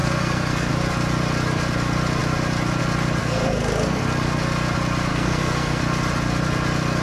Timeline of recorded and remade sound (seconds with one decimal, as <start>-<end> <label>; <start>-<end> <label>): 0.0-0.7 remade; 0.7-3.2 recorded; 3.2-4.0 remade; 4.0-5.1 recorded; 5.1-5.8 remade; 5.8-7.0 recorded